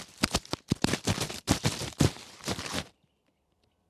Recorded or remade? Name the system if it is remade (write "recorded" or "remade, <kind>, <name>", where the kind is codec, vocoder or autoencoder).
remade, vocoder, BigVGAN v2